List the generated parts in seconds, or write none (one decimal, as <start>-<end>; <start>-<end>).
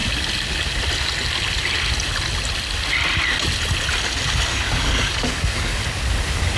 4.5-5.8